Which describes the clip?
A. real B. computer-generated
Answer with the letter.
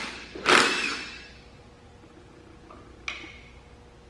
A